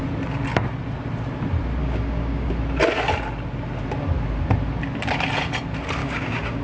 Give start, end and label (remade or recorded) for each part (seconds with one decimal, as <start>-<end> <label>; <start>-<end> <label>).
0.0-1.8 recorded; 1.8-2.5 remade; 2.5-6.0 recorded; 6.0-6.6 remade